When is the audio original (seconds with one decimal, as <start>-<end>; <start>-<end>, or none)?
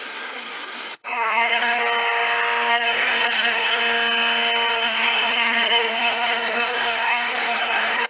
1.8-2.7; 3.8-4.7